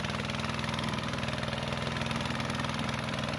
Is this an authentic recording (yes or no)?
yes